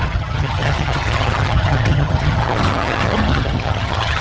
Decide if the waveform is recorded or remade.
remade